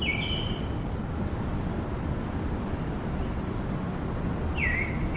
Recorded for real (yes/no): yes